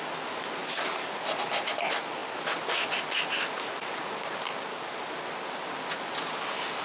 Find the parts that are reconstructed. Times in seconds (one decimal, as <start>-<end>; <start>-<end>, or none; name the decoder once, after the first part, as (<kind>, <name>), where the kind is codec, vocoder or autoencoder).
none